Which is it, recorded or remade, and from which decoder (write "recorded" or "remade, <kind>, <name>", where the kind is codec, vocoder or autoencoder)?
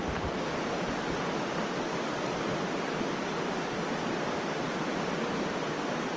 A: recorded